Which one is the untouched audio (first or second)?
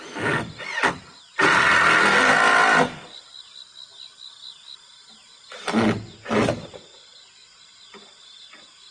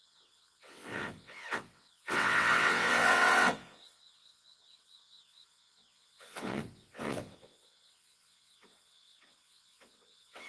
first